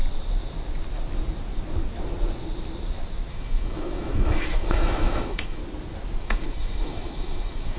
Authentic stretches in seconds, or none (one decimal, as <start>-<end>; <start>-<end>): 0.0-3.3; 5.6-6.2